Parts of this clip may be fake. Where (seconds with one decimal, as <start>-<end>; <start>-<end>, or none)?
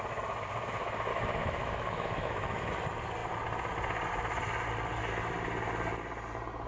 1.1-2.7